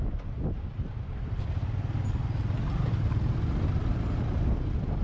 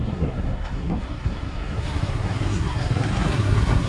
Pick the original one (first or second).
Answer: first